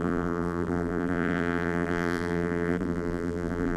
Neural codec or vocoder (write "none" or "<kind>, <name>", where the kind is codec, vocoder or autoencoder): vocoder, BigVGAN v2